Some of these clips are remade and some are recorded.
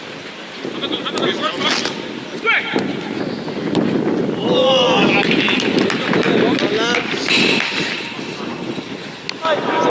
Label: recorded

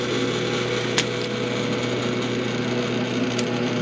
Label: recorded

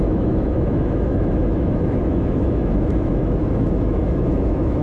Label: remade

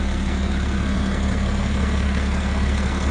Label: remade